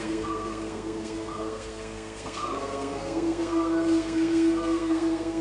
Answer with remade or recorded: remade